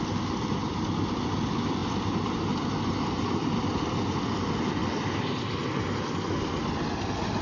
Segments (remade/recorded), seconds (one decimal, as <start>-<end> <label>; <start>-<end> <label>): 0.0-7.4 recorded